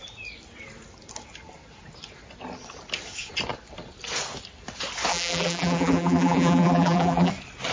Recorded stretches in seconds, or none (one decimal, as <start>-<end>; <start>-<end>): 0.0-5.1; 7.3-7.7

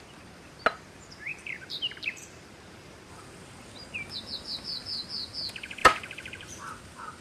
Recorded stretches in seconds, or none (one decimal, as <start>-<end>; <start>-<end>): 0.0-1.3; 3.5-5.8; 6.8-7.2

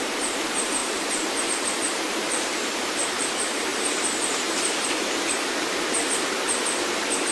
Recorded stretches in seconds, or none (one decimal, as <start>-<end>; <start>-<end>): none

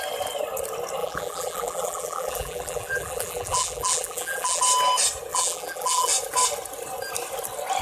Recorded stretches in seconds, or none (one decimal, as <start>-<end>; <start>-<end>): 0.0-1.0; 4.6-5.3; 6.1-7.8

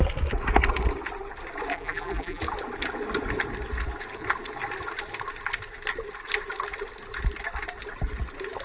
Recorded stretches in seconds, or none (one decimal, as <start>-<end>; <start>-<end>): 0.0-1.7; 2.4-8.6

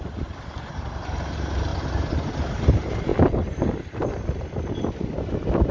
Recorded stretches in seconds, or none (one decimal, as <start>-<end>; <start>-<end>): 0.0-5.7

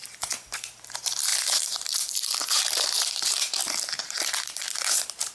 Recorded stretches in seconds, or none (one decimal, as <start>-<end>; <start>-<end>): 3.6-4.4

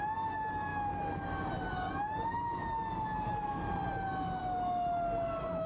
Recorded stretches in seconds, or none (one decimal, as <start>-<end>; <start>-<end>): 0.0-0.7; 1.5-5.7